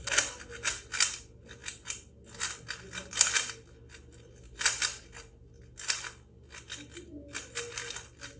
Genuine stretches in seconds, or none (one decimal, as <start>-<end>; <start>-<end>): 0.0-8.4